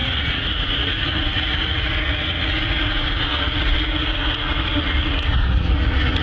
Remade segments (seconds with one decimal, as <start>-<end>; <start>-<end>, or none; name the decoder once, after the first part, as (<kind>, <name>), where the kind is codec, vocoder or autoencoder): 0.0-6.2 (vocoder, Vocos)